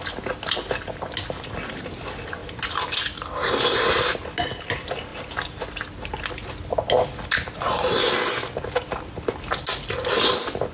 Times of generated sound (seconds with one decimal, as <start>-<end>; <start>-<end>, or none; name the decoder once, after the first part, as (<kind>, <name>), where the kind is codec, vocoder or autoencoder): none